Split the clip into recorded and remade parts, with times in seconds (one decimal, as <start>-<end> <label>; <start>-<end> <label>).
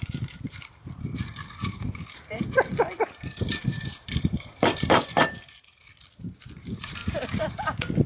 0.0-8.1 remade